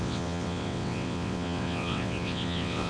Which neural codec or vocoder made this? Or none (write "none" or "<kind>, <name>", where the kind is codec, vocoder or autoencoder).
vocoder, WaveNeXt